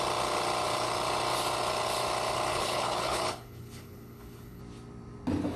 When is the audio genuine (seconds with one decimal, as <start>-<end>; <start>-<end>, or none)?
0.0-2.5; 4.6-5.6